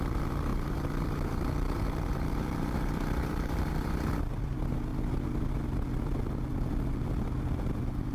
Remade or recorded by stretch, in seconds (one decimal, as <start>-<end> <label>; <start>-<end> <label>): 0.0-0.5 recorded; 0.5-4.2 remade; 4.2-8.1 recorded